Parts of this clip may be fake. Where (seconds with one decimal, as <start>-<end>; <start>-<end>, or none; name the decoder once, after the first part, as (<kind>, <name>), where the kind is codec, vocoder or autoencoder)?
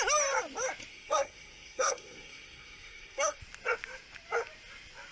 0.9-3.4 (codec, SNAC)